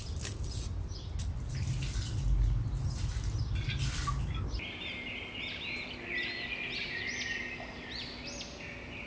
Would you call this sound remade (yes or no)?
no